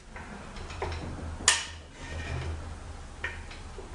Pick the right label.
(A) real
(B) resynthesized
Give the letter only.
A